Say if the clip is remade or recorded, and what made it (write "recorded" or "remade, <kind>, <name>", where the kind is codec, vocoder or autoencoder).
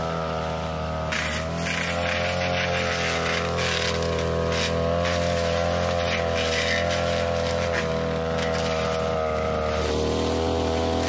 recorded